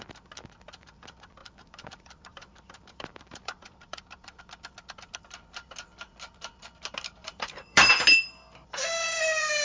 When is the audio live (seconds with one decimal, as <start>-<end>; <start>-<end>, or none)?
0.0-1.4; 4.4-7.2; 7.9-9.6